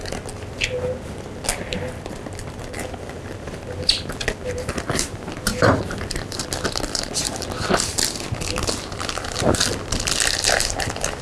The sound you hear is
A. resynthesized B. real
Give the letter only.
B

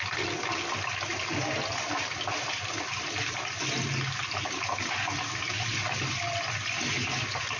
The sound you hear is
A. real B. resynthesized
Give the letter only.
A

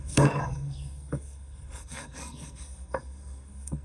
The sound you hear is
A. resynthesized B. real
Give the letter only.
A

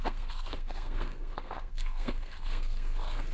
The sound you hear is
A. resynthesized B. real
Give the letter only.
A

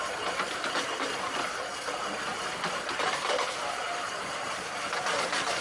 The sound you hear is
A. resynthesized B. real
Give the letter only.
A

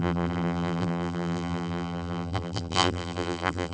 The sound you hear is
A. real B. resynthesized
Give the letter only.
B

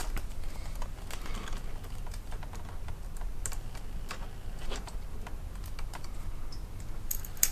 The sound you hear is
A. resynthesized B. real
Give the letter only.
B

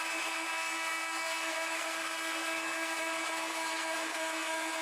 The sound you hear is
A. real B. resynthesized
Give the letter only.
B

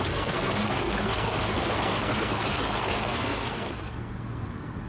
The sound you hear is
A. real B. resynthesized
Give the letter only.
B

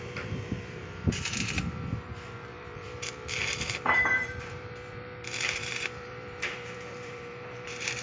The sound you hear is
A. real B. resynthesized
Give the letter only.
B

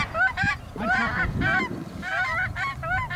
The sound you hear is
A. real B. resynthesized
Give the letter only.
A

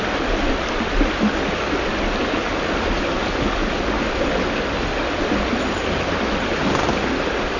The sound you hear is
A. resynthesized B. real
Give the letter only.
B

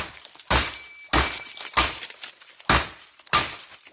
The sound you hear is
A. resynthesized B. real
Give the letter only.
B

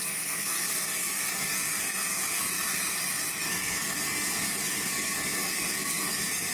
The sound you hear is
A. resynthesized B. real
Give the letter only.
A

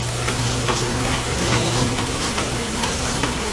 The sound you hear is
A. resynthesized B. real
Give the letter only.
A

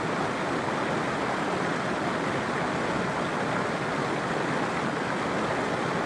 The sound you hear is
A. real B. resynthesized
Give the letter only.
A